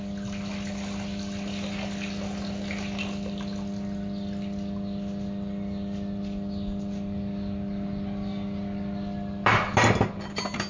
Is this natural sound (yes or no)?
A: yes